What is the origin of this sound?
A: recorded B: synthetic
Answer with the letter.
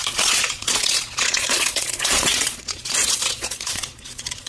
B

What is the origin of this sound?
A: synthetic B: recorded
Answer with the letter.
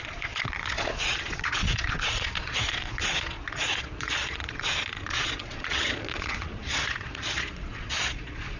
A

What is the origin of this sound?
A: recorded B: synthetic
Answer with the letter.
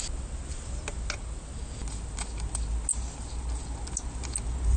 A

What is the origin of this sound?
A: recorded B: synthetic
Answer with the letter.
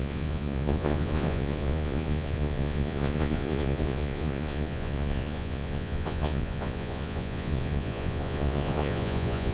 B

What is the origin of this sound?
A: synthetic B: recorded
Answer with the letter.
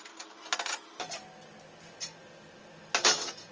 B